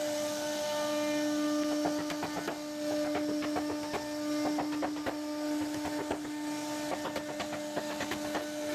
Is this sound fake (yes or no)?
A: no